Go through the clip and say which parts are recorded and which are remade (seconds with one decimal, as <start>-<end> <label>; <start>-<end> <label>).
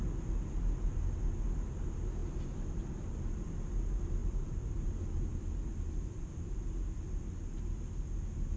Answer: 0.0-4.2 recorded; 4.2-4.8 remade; 4.8-5.3 recorded; 5.3-6.3 remade; 6.3-8.6 recorded